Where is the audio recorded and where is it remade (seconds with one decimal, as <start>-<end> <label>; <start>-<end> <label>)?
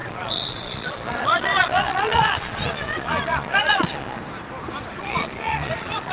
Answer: 0.0-4.2 remade; 4.2-5.0 recorded; 5.0-6.1 remade